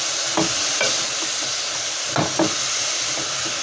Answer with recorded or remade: recorded